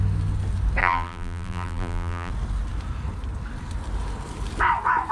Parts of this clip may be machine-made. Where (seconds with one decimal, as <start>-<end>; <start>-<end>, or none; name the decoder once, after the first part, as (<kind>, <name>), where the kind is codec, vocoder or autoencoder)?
0.8-2.3 (vocoder, BigVGAN v2)